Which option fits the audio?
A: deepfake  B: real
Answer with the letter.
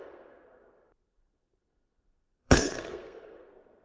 A